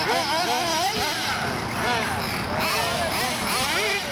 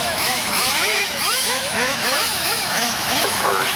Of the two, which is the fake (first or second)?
second